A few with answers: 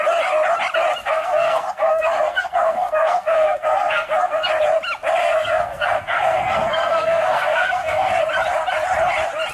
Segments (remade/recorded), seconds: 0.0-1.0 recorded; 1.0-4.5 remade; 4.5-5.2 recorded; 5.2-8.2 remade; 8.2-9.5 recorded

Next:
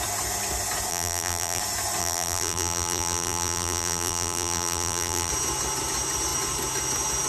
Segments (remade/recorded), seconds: 0.0-0.9 recorded; 0.9-1.6 remade; 1.6-2.0 recorded; 2.0-5.3 remade; 5.3-7.3 recorded

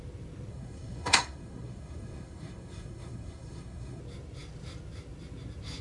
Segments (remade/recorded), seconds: 0.0-0.5 recorded; 0.5-4.0 remade; 4.0-5.8 recorded